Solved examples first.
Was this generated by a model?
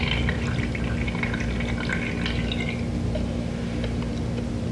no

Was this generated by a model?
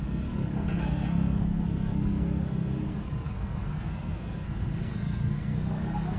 yes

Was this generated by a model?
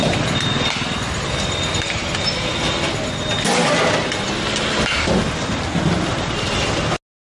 no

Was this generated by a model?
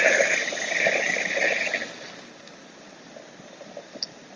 no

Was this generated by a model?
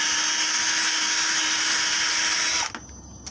no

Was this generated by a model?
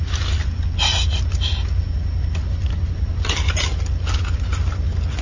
no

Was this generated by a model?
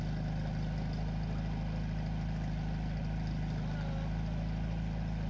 no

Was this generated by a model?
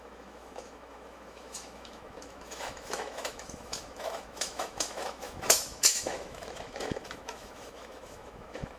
yes